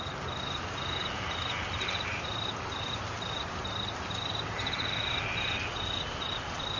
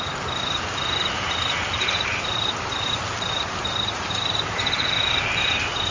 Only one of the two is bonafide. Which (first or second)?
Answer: first